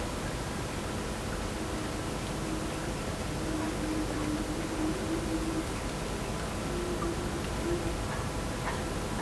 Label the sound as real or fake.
real